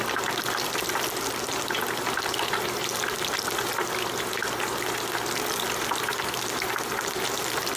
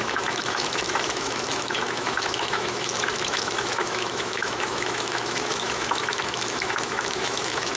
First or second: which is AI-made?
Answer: second